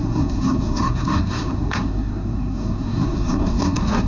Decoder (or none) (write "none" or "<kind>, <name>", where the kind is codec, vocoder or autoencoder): codec, SNAC